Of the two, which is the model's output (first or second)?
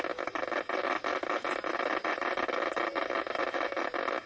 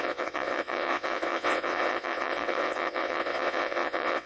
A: second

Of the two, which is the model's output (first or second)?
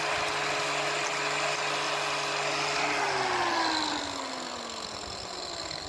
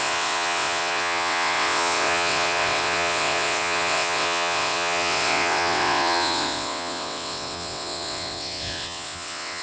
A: second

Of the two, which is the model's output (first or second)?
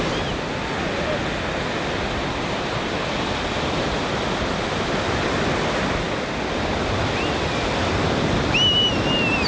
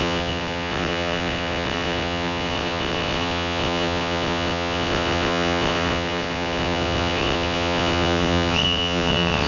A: second